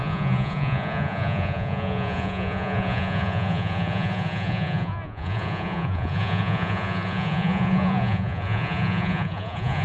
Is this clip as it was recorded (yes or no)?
no